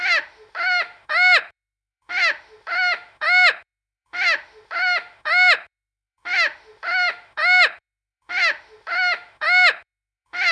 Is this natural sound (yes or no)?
no